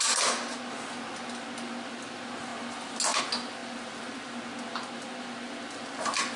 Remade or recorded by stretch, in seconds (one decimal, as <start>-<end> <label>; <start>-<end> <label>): 0.0-3.6 recorded; 3.6-4.4 remade; 4.4-6.4 recorded